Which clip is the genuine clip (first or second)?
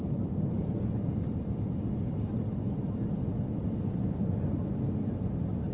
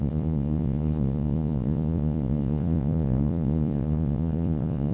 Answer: first